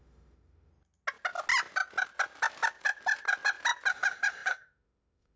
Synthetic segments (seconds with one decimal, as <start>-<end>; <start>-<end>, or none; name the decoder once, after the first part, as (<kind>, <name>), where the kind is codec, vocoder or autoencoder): 0.0-0.7 (autoencoder, DAC-VAE); 3.9-5.4